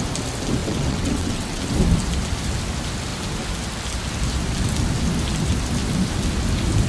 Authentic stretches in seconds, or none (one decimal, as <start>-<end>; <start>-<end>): 0.0-0.6; 1.6-6.9